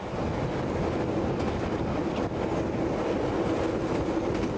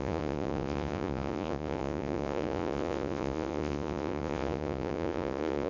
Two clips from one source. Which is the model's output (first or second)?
second